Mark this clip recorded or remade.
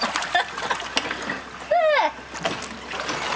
recorded